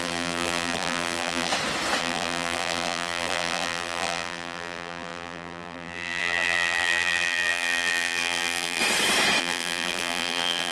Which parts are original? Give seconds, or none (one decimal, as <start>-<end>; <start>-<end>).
1.5-2.0; 8.8-9.4